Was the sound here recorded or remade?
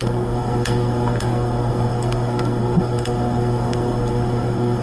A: remade